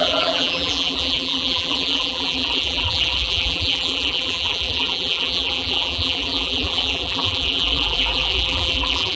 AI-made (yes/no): yes